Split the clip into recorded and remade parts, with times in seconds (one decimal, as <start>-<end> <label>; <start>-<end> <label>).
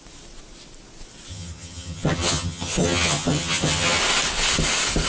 0.0-1.3 recorded; 1.3-4.0 remade; 4.0-5.1 recorded